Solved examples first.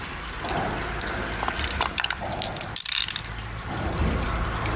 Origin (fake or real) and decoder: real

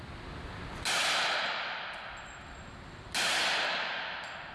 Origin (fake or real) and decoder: real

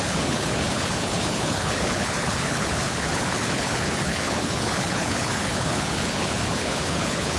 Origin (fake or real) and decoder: fake, codec, HILCodec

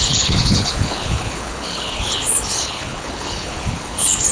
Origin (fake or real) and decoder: fake, codec, HILCodec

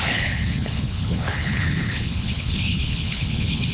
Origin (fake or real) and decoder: fake, codec, HILCodec